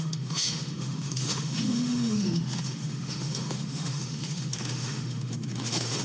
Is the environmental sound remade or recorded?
remade